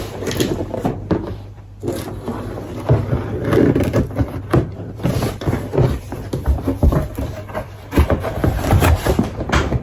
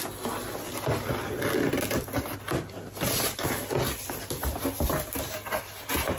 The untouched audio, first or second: second